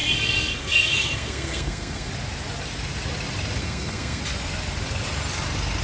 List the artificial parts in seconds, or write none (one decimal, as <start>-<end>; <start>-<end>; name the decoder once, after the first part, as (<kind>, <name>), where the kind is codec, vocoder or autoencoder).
0.0-2.1 (codec, SNAC); 3.6-4.2